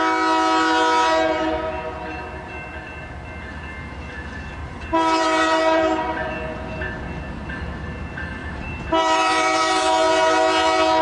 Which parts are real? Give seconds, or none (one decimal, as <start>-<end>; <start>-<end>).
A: 0.0-4.6; 6.3-8.4; 9.9-11.0